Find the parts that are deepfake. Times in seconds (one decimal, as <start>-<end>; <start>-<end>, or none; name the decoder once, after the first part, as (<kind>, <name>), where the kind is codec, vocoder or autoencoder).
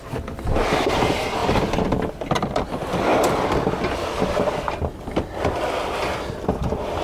none